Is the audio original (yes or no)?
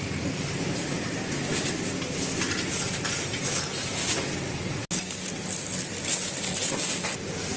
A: yes